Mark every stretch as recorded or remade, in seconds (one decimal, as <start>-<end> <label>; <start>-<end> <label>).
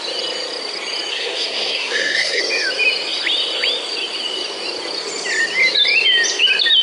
0.0-1.1 recorded; 1.1-2.4 remade; 2.4-6.8 recorded